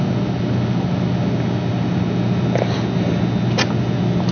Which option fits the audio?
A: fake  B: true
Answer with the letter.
B